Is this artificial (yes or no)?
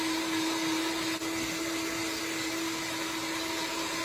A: no